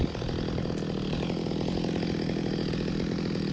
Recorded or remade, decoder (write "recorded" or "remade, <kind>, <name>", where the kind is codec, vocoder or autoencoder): recorded